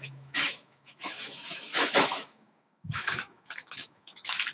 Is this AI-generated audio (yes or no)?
yes